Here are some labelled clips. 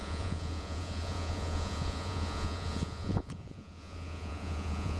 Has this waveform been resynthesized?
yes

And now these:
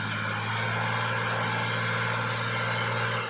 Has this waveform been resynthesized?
no